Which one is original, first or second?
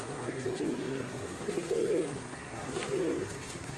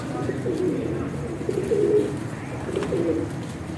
second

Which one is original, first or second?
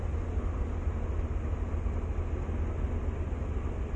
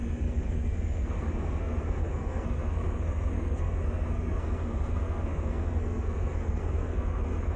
first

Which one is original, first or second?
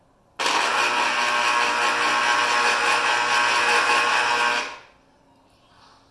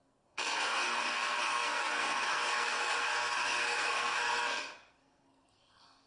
first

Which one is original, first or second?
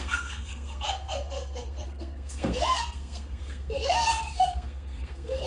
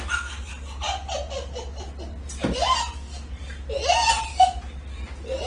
second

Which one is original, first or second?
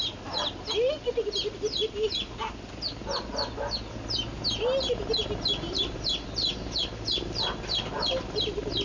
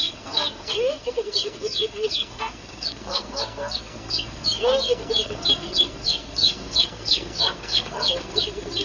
first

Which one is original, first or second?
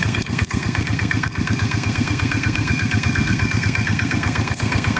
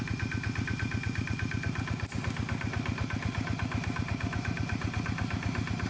second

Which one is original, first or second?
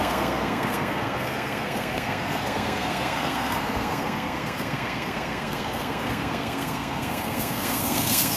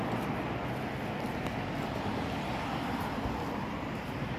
second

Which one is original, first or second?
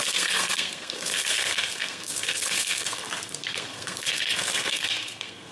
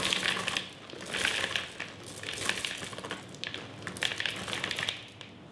second